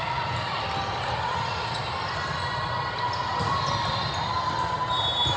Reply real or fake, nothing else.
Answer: real